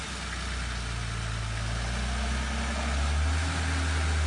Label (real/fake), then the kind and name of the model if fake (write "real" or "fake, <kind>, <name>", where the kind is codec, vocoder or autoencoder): real